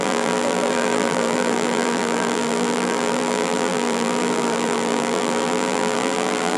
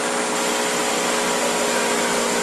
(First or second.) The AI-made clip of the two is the first